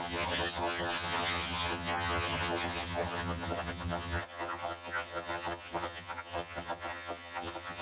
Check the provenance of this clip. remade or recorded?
remade